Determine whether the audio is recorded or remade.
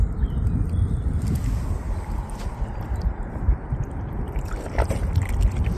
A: recorded